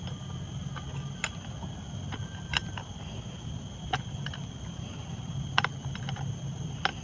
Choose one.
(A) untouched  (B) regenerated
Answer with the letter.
A